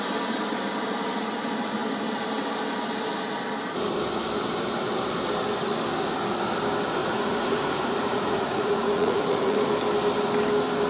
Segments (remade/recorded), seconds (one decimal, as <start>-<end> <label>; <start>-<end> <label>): 0.0-7.0 recorded; 7.0-9.7 remade; 9.7-10.9 recorded